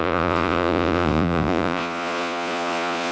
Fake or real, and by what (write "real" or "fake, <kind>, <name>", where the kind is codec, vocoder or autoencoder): fake, vocoder, Vocos